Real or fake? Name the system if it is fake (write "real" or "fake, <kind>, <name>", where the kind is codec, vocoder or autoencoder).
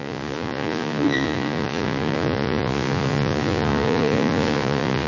fake, vocoder, Vocos